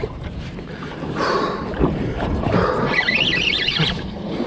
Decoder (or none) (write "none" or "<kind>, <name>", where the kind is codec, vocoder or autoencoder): vocoder, BigVGAN v2